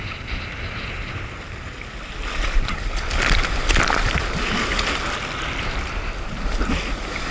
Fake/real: real